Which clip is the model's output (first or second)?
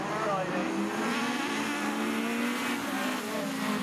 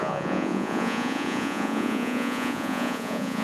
second